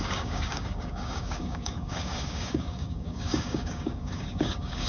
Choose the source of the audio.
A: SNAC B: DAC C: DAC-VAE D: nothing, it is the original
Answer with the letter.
B